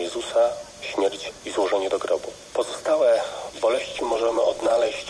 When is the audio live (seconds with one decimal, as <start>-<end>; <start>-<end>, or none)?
0.0-3.9